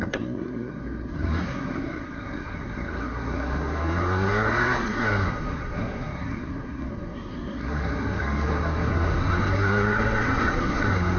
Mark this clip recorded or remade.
remade